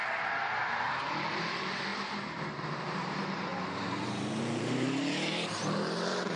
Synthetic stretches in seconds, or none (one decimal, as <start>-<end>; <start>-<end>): 1.0-6.4